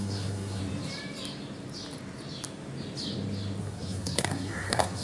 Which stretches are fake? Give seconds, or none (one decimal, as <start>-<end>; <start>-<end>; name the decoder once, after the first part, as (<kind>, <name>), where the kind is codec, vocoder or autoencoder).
0.0-0.6 (codec, SNAC); 3.6-5.0